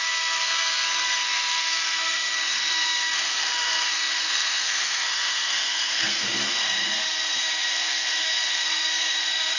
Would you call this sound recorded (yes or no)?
no